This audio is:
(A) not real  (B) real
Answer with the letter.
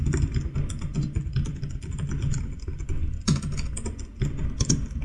B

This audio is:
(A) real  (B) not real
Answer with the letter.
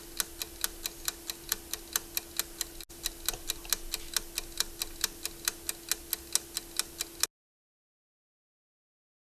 A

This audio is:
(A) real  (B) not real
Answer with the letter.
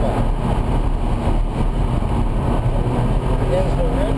A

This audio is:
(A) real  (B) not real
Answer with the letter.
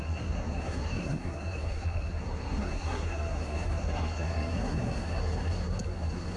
B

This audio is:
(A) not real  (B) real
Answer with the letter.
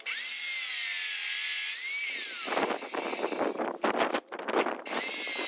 B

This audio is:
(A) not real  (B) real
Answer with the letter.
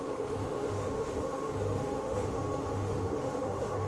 A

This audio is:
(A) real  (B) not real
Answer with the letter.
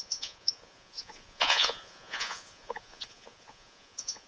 B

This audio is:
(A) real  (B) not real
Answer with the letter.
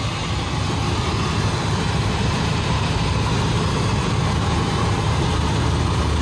A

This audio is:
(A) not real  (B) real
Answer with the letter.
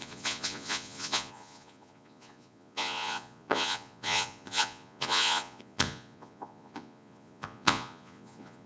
A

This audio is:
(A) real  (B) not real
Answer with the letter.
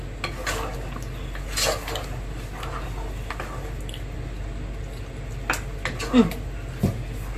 A